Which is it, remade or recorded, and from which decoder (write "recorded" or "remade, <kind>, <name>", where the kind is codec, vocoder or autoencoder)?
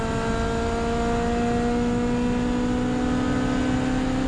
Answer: recorded